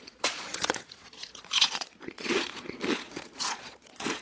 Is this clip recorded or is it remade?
remade